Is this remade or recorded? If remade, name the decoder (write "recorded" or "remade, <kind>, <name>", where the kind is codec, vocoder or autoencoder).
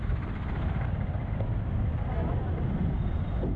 recorded